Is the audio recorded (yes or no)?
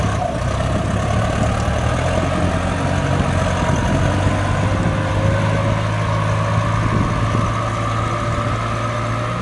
yes